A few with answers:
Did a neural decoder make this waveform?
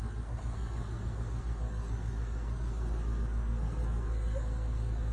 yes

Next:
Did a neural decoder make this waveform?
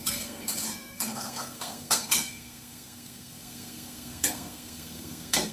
yes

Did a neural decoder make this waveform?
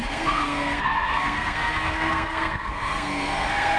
yes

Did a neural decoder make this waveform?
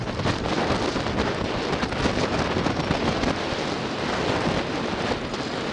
no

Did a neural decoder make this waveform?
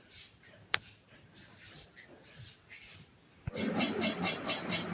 no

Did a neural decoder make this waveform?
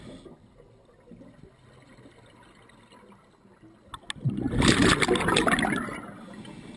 no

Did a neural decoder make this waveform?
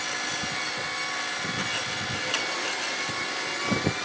no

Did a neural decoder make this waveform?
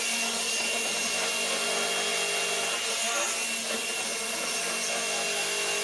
no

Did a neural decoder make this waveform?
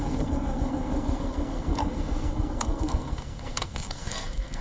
yes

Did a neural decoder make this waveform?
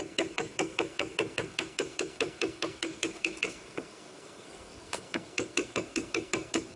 yes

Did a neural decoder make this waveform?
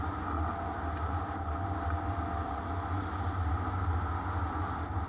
no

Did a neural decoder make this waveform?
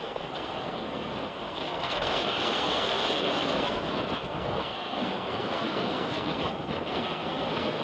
yes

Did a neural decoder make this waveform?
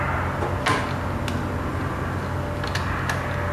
no